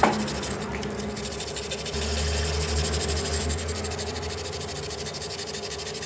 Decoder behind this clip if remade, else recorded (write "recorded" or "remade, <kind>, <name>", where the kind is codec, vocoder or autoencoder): recorded